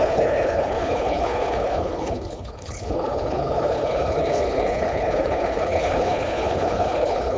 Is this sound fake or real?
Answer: fake